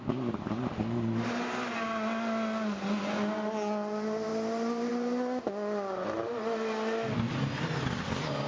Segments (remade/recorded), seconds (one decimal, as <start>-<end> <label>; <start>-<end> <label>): 0.0-8.5 recorded